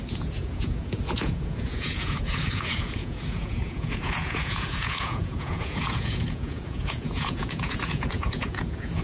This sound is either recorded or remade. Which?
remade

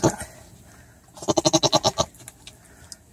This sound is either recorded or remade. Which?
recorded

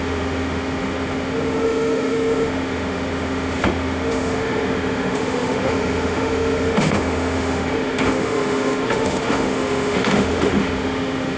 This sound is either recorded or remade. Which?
remade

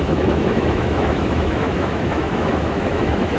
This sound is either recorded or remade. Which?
remade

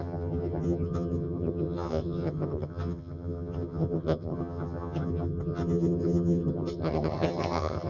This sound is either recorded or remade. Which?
remade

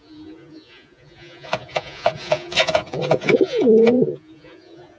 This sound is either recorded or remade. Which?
remade